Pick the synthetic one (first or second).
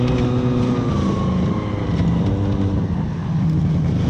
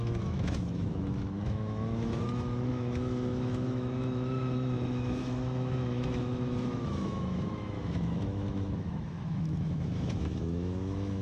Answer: second